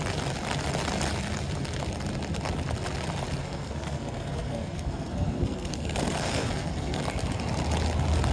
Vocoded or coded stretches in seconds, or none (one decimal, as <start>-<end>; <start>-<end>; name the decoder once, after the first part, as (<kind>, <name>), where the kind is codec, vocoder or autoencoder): 3.4-7.0 (codec, SNAC)